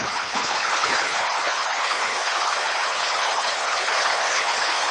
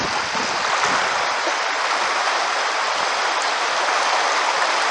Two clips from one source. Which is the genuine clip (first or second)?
second